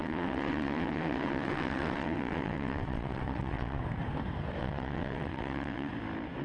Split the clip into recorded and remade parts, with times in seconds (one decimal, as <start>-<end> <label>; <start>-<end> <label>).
0.0-3.8 remade; 3.8-4.6 recorded; 4.6-5.9 remade; 5.9-6.4 recorded